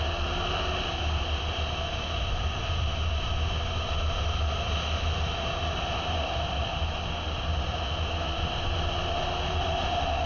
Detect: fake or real real